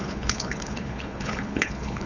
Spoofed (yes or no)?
yes